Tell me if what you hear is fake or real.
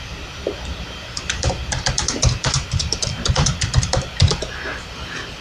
fake